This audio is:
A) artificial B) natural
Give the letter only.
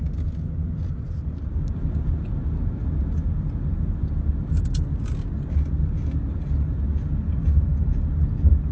B